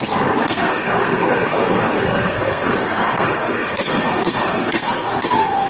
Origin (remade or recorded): remade